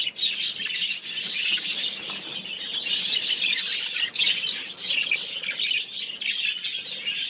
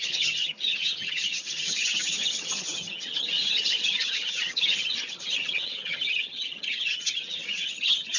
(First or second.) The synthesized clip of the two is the second